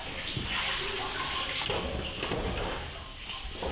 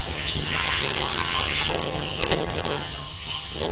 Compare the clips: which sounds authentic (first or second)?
first